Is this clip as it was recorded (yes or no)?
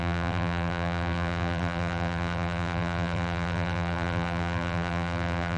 no